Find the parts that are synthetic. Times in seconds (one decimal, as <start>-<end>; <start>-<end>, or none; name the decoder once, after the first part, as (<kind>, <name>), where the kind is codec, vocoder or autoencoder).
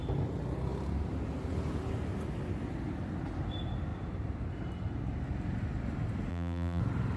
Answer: 6.3-6.8 (vocoder, BigVGAN v2)